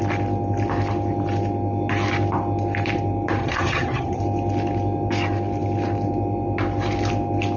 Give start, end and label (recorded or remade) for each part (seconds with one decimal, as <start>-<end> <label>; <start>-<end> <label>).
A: 0.0-3.4 recorded; 3.4-4.2 remade; 4.2-7.6 recorded